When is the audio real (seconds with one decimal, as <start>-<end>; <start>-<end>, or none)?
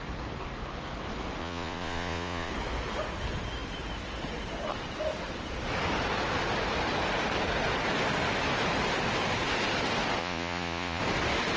0.0-1.4; 2.5-10.2; 11.0-11.6